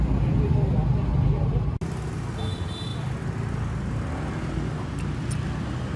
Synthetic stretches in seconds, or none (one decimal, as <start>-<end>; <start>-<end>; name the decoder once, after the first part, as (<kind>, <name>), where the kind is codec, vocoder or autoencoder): none